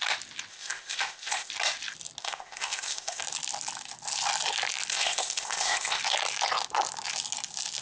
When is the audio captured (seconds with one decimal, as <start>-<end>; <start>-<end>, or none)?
0.0-0.5; 1.5-2.2; 3.2-4.9; 6.0-7.8